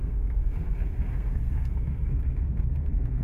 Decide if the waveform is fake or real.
fake